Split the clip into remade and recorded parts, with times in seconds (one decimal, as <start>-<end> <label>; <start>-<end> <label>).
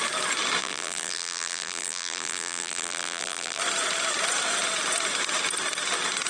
0.0-0.6 recorded; 0.6-3.6 remade; 3.6-6.3 recorded